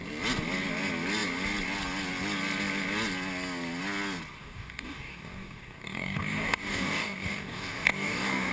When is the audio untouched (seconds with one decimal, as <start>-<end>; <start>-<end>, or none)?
0.0-4.4